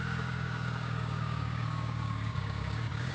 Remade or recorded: remade